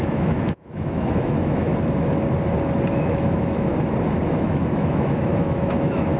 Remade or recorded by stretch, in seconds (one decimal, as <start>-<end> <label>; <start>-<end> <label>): 0.0-1.7 remade; 1.7-2.9 recorded; 2.9-3.7 remade; 3.7-4.3 recorded; 4.3-6.2 remade